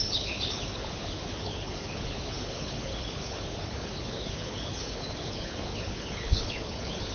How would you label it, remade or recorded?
remade